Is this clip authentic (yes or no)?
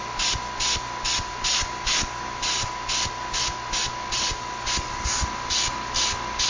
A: yes